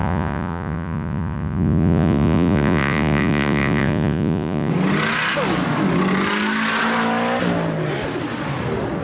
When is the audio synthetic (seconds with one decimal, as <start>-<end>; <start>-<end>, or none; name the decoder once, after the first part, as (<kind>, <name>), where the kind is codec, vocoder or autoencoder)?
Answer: 0.0-4.7 (vocoder, Vocos)